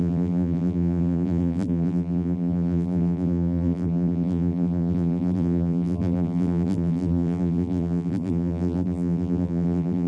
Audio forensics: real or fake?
fake